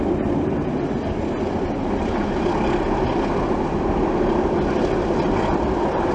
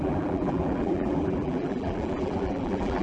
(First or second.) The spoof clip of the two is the second